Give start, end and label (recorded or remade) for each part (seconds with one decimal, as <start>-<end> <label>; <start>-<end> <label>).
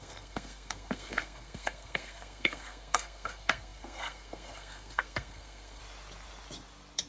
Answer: 0.0-5.8 remade; 5.8-7.1 recorded